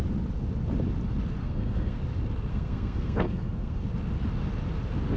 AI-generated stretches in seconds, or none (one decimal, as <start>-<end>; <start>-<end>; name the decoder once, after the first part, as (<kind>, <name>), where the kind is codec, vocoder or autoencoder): 1.4-2.0 (codec, SNAC); 2.5-3.8